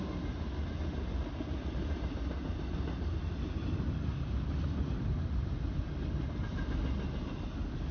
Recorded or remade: recorded